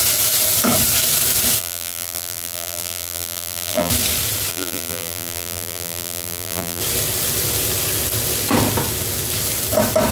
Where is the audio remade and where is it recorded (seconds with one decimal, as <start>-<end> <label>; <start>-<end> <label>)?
0.0-1.6 recorded; 1.6-3.9 remade; 3.9-4.5 recorded; 4.5-6.8 remade; 6.8-10.1 recorded